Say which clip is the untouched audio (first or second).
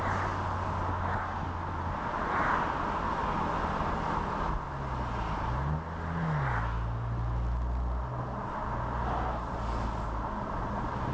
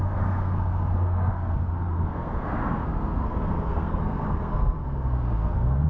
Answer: first